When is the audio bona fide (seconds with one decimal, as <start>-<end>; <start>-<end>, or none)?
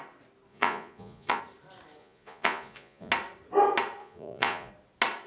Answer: 0.0-0.5; 1.4-2.0; 3.1-4.0; 4.7-5.3